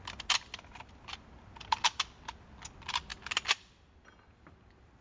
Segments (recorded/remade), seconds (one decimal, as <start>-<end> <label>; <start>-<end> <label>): 0.0-5.0 recorded